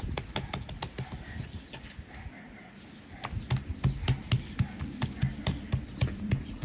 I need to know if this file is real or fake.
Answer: real